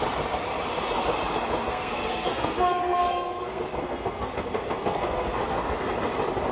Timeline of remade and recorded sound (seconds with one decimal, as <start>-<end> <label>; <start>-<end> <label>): 0.0-1.7 recorded; 1.7-5.6 remade; 5.6-6.5 recorded